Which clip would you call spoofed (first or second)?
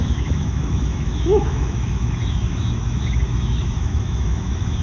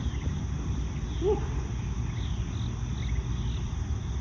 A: first